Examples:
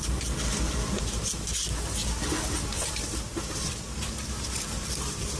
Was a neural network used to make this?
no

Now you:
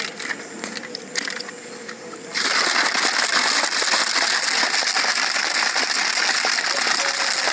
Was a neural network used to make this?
no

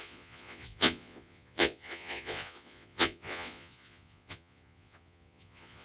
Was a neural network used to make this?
yes